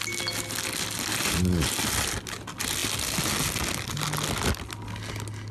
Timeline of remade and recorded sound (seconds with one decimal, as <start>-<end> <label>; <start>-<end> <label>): 0.0-5.5 recorded